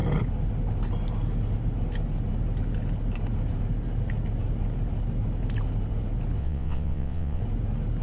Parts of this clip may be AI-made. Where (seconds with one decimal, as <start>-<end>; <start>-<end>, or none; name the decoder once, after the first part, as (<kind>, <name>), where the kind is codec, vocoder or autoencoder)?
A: 6.4-7.4 (vocoder, WaveNeXt)